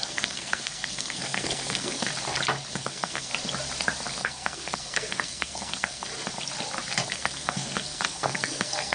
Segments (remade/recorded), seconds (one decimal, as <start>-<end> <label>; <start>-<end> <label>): 0.0-2.1 remade; 2.1-2.7 recorded; 2.7-3.3 remade; 3.3-4.2 recorded; 4.2-6.1 remade; 6.1-7.1 recorded; 7.1-8.9 remade